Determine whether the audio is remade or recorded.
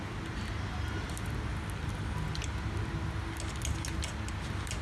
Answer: recorded